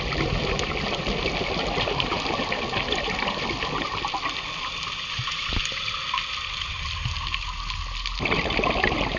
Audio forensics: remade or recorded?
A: recorded